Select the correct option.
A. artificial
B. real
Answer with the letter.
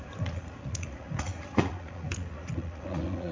A